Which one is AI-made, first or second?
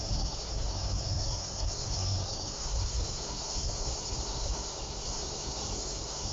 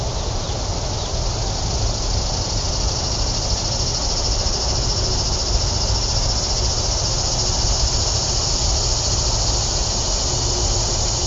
first